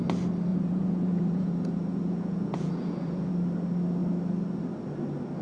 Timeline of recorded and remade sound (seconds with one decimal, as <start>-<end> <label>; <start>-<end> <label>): 0.0-0.5 recorded; 0.5-3.3 remade; 3.3-5.4 recorded